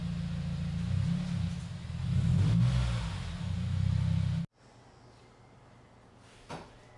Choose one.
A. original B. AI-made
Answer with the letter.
A